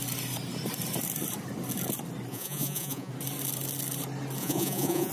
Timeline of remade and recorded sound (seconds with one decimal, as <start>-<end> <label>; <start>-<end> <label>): 0.0-2.3 recorded; 2.3-3.1 remade; 3.1-4.4 recorded; 4.4-5.1 remade